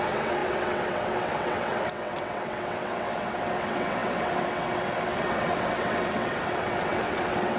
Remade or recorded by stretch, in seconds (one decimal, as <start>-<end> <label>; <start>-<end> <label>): 0.0-7.6 remade